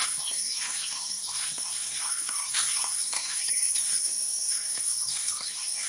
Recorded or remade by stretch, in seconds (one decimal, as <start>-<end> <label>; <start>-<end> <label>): 0.0-5.9 remade